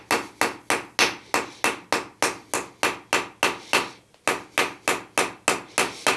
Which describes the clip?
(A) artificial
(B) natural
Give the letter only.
B